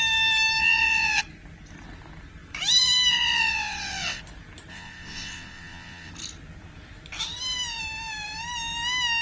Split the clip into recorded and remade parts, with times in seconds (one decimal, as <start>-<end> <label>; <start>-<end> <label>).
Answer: 0.0-0.6 recorded; 0.6-1.2 remade; 1.2-3.1 recorded; 3.1-4.2 remade; 4.2-4.7 recorded; 4.7-6.1 remade; 6.1-9.2 recorded